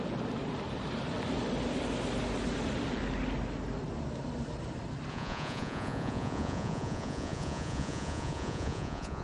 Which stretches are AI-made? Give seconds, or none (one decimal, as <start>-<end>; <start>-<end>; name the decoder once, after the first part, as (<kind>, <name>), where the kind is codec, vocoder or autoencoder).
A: 5.1-9.2 (vocoder, Vocos)